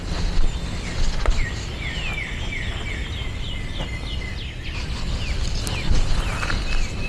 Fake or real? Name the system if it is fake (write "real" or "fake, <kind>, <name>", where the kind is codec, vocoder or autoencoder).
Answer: real